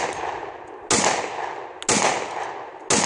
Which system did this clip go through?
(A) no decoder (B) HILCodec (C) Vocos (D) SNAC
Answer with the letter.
A